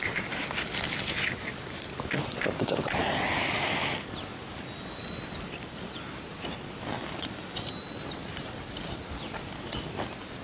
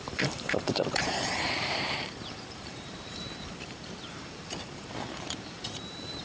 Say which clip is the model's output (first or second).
second